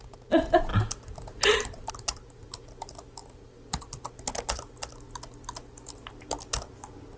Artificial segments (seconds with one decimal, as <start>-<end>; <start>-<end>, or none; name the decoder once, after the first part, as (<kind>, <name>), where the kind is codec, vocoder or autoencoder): 0.7-1.9 (vocoder, BigVGAN v2); 3.2-3.9